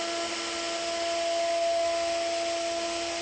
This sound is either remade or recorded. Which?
recorded